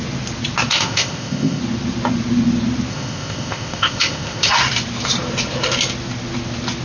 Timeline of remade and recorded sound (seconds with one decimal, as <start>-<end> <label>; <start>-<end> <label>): 0.0-0.7 recorded; 0.7-1.6 remade; 1.6-2.9 recorded; 2.9-4.5 remade; 4.5-6.8 recorded